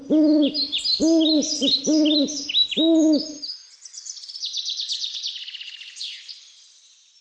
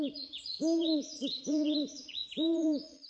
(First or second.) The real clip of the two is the first